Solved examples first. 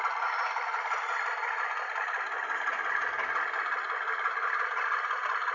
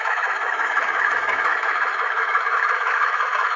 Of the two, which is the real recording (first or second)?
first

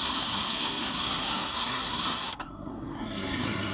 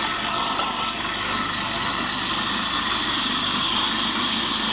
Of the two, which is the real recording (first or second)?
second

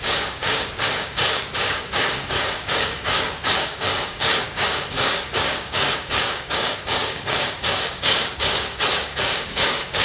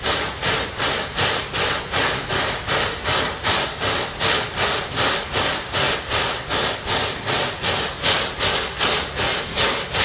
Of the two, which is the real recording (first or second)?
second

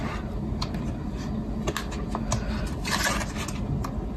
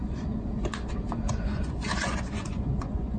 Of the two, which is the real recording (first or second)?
first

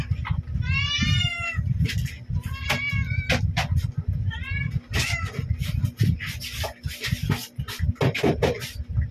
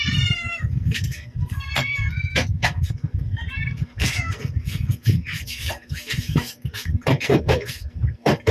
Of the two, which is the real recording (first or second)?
first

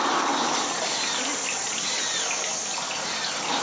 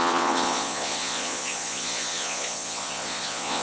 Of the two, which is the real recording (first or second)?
first